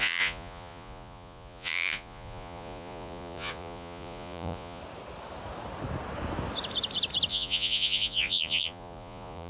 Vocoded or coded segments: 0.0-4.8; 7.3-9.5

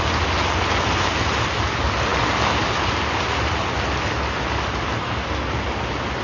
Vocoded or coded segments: 5.0-5.5

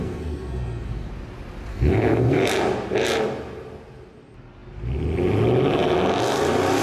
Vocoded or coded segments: 0.0-1.1; 1.7-2.5

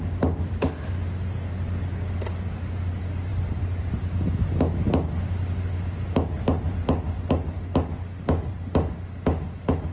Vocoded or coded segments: none

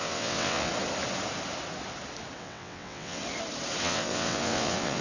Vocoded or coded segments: 0.0-0.7; 2.4-3.2; 3.8-5.0

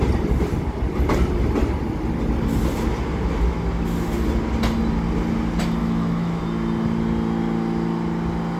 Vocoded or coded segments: 5.8-6.4

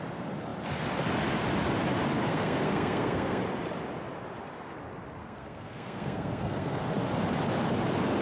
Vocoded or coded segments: 2.3-3.4; 5.2-6.8

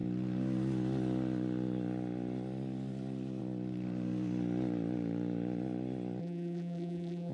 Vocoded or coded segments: 6.2-7.3